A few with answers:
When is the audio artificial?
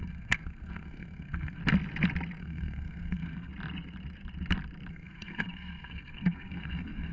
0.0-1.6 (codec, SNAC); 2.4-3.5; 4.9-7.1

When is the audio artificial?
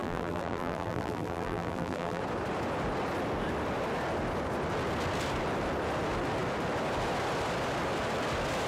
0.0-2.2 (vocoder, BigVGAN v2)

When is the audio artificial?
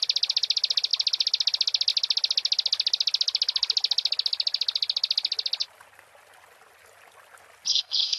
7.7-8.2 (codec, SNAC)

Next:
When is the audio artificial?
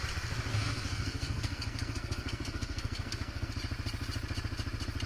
0.5-3.5 (codec, SNAC)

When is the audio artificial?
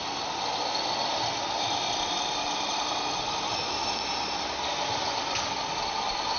none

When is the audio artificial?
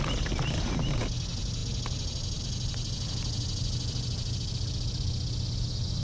none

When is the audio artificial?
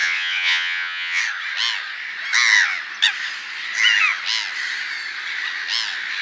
0.0-1.2 (vocoder, WaveNeXt)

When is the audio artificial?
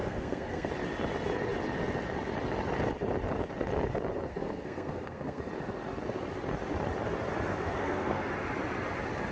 0.0-0.7 (codec, SNAC); 4.3-5.4; 7.5-8.3